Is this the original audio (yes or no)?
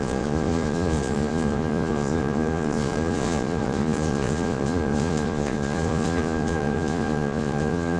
no